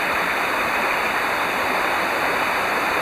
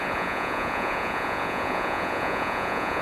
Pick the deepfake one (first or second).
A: second